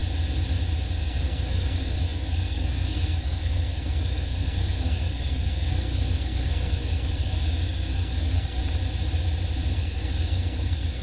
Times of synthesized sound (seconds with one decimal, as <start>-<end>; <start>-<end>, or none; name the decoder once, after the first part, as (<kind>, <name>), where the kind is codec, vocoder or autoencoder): 1.0-8.6 (codec, SNAC); 9.7-11.0